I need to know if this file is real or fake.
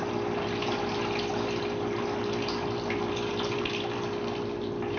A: real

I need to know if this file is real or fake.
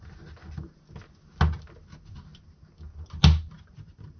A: real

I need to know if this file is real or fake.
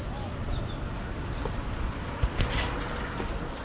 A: real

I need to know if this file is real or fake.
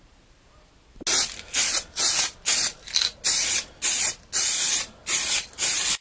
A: real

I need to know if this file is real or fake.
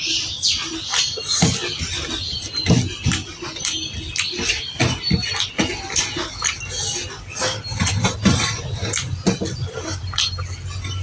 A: real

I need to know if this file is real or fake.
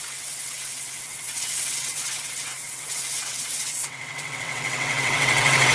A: fake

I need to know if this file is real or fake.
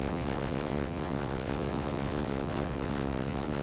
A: fake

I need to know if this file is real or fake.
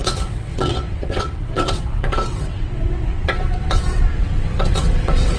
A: fake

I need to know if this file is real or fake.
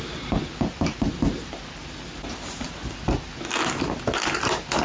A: real